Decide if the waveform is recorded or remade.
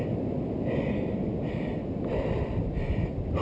recorded